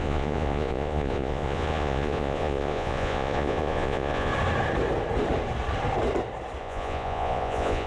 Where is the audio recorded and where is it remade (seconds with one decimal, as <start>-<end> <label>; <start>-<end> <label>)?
0.0-4.3 remade; 4.3-6.6 recorded; 6.6-7.9 remade